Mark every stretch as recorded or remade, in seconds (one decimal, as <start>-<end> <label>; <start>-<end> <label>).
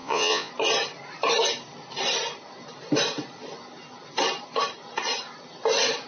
0.0-0.5 remade; 0.5-6.1 recorded